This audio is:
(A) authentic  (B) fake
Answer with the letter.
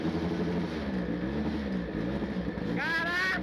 A